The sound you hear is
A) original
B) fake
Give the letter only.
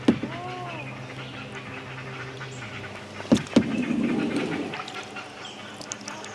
A